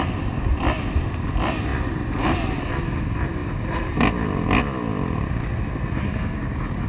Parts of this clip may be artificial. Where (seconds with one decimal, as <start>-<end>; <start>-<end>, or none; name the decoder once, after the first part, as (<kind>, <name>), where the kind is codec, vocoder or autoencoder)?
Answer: 6.1-6.9 (codec, DAC)